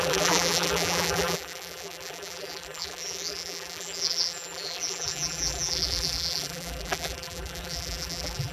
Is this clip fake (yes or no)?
yes